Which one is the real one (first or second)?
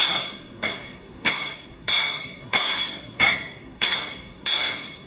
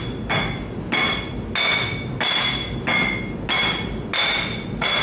second